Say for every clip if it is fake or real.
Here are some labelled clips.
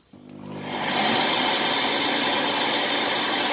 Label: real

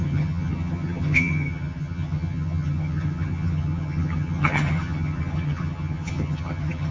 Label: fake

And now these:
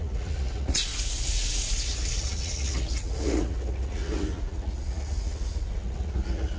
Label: fake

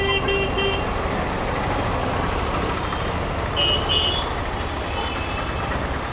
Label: real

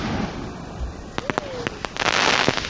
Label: real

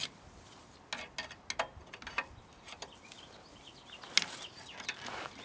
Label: real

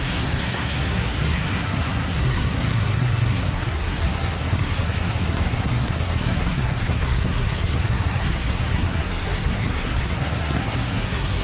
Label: fake